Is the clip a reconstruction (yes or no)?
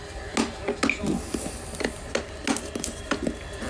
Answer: no